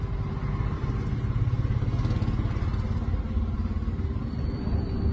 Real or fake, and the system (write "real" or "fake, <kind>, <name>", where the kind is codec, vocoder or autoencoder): real